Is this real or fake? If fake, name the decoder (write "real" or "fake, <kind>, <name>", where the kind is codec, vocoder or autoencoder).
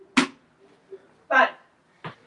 real